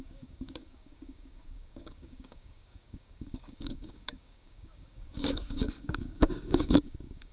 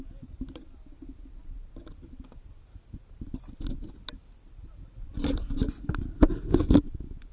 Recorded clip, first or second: second